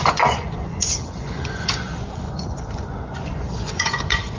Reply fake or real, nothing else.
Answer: fake